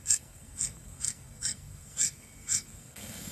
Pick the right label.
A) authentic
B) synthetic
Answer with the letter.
B